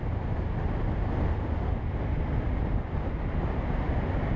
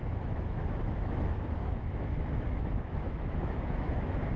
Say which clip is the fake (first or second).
second